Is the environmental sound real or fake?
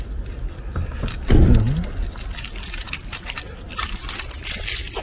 real